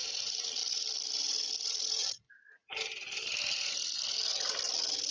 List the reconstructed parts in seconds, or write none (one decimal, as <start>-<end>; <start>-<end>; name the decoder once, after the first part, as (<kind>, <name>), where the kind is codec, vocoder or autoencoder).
none